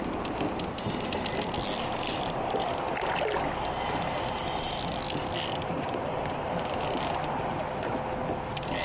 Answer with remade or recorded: recorded